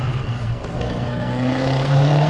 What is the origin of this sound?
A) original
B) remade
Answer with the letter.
B